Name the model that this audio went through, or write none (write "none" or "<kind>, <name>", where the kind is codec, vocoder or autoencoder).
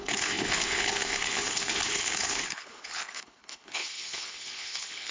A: codec, HILCodec